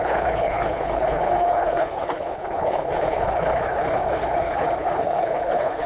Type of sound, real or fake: fake